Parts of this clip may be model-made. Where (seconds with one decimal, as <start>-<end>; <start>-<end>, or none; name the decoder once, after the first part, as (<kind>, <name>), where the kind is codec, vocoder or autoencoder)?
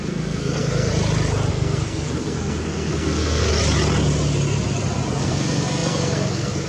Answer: 0.0-0.9 (codec, SNAC); 1.5-3.5; 5.2-6.7